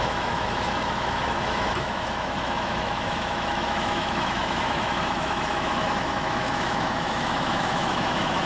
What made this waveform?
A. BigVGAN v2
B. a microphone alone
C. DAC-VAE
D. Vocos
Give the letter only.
C